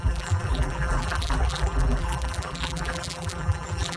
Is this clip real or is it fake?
fake